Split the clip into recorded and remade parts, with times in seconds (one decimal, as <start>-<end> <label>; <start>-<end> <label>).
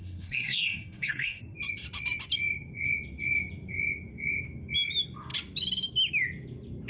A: 0.0-1.4 remade; 1.4-6.9 recorded